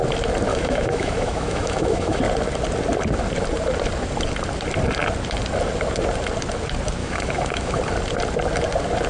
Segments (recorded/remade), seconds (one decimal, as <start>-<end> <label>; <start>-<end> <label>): 0.0-0.5 recorded; 0.5-2.2 remade; 2.2-7.0 recorded; 7.0-7.8 remade; 7.8-9.1 recorded